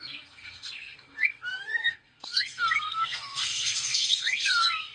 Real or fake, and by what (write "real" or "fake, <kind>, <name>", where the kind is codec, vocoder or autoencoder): fake, codec, SNAC